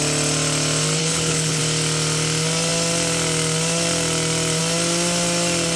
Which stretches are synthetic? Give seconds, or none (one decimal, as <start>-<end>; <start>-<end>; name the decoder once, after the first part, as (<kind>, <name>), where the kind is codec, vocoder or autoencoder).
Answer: 1.0-1.6 (codec, HILCodec)